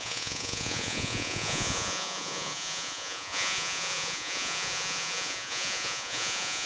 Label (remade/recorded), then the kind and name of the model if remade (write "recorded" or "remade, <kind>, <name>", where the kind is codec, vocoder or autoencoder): remade, vocoder, Vocos